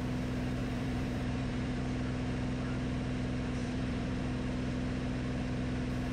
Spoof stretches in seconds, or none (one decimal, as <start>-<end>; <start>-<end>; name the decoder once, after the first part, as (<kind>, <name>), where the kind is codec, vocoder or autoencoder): 0.6-1.8 (vocoder, BigVGAN v2); 3.6-4.2